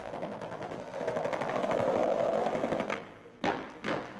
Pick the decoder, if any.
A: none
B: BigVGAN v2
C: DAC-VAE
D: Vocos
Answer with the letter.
B